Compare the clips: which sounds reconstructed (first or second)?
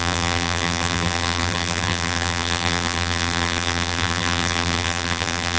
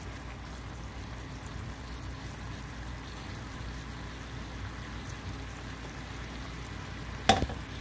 first